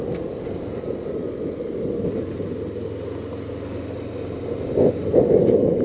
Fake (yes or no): no